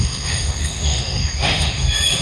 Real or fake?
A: fake